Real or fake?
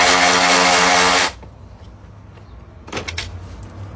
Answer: real